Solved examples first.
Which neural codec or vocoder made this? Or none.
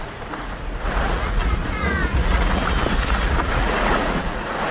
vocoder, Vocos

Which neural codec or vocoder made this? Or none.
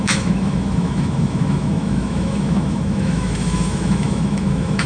autoencoder, DAC-VAE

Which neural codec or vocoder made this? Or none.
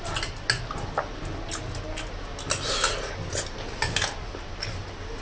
none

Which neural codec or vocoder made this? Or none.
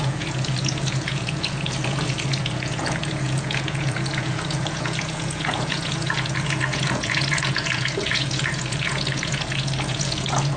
vocoder, Vocos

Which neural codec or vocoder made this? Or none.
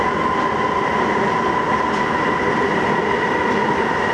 none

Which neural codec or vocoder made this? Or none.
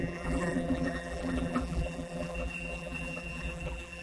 vocoder, BigVGAN v2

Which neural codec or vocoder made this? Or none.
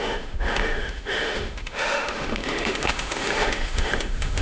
autoencoder, DAC-VAE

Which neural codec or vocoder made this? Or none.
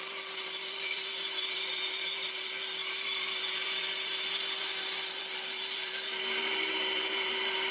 vocoder, BigVGAN v2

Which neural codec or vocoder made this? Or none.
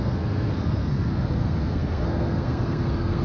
codec, SNAC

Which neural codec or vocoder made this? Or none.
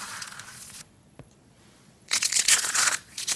vocoder, Vocos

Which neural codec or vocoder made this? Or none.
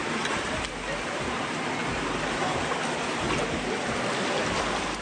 none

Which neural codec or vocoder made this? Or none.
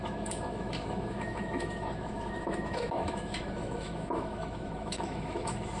autoencoder, DAC-VAE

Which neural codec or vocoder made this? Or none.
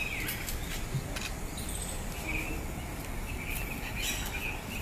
none